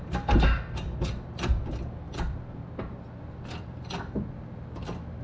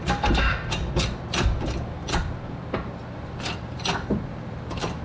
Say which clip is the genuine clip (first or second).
first